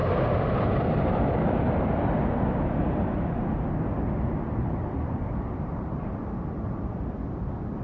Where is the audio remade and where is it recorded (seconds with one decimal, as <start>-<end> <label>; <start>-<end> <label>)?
0.0-1.5 remade; 1.5-7.8 recorded